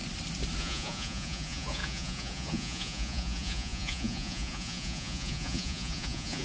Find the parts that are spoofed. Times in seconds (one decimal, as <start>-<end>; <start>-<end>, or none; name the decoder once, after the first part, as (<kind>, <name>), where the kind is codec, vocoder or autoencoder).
0.6-6.4 (vocoder, Vocos)